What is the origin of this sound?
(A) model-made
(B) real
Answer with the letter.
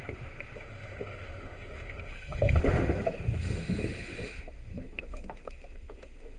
A